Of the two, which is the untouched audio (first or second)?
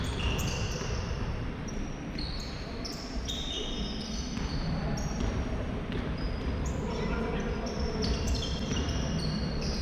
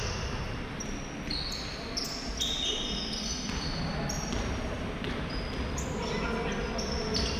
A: second